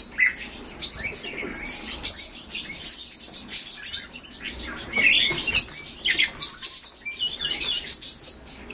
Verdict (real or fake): real